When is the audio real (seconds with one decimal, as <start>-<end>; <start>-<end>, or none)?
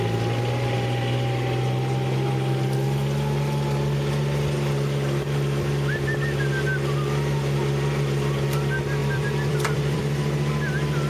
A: 0.0-9.0; 10.0-11.1